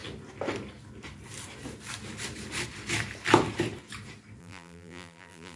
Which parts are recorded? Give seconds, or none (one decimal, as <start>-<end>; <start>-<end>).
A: 0.0-4.4